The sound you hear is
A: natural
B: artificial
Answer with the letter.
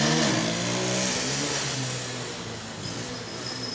A